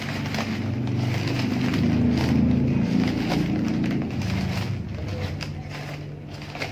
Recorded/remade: recorded